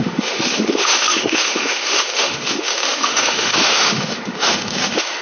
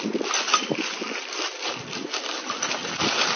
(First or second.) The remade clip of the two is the first